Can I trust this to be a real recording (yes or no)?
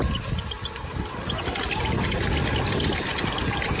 yes